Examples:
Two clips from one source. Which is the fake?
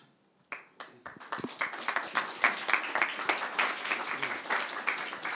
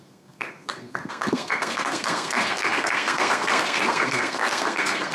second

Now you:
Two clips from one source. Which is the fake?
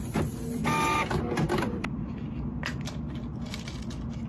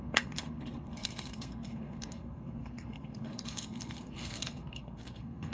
second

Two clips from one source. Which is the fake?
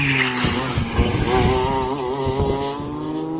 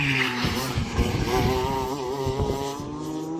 second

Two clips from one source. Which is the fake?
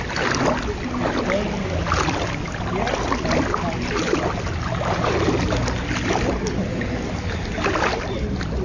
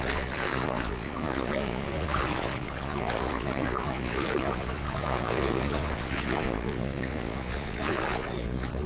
second